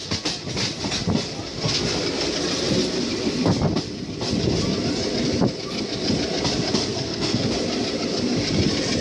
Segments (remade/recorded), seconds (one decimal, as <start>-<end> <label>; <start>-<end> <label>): 0.0-6.9 recorded; 6.9-7.5 remade; 7.5-9.0 recorded